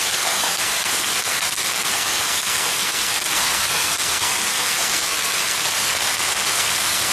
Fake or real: fake